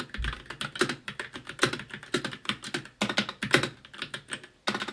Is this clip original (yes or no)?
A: yes